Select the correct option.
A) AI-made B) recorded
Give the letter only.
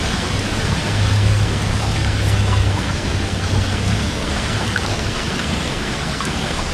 A